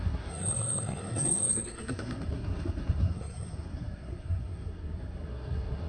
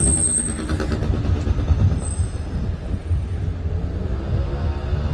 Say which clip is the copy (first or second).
first